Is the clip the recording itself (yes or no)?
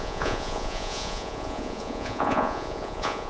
no